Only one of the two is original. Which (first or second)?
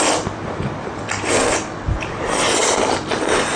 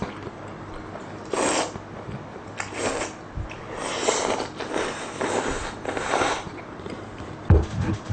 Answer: second